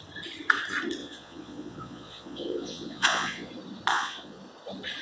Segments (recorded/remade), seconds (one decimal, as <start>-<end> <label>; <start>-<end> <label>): 0.0-1.0 recorded; 1.0-3.5 remade; 3.5-3.9 recorded; 3.9-4.4 remade; 4.4-5.0 recorded